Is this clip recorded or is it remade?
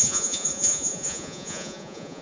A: remade